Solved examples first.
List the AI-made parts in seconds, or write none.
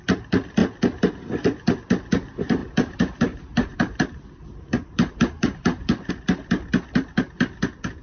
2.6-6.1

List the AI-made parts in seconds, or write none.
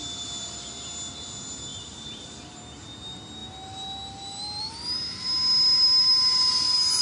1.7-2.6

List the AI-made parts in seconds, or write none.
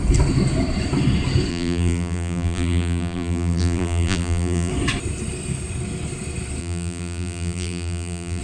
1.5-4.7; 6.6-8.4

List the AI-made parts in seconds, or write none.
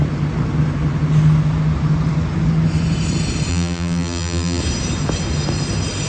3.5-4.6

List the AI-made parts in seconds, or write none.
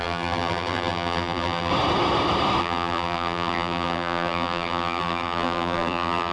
0.0-1.7; 2.6-6.3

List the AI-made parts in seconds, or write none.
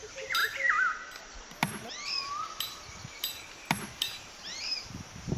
0.0-0.4; 1.2-1.6; 4.3-5.4